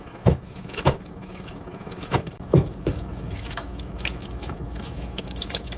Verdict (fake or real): fake